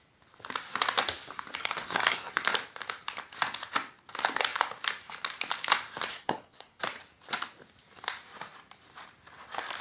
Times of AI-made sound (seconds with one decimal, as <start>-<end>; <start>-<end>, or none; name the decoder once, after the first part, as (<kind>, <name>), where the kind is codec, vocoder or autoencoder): 1.6-2.3 (codec, SNAC); 6.1-6.8